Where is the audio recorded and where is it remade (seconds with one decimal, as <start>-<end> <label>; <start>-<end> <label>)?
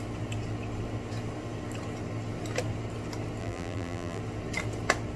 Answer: 0.0-3.4 recorded; 3.4-4.2 remade; 4.2-5.2 recorded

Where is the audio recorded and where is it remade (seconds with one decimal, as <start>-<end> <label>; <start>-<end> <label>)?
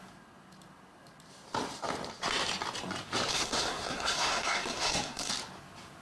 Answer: 0.0-3.3 recorded; 3.3-5.3 remade; 5.3-6.0 recorded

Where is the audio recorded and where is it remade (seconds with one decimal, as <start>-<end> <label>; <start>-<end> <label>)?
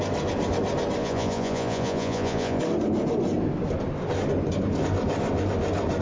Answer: 0.0-1.0 recorded; 1.0-2.6 remade; 2.6-6.0 recorded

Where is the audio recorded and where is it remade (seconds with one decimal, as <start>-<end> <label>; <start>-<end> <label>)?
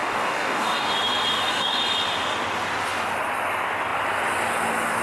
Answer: 0.0-0.9 remade; 0.9-1.3 recorded; 1.3-1.8 remade; 1.8-5.0 recorded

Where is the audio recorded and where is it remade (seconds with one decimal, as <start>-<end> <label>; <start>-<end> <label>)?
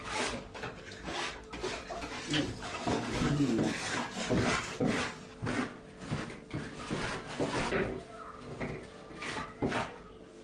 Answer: 0.0-1.6 remade; 1.6-2.4 recorded; 2.4-5.7 remade; 5.7-10.0 recorded; 10.0-10.4 remade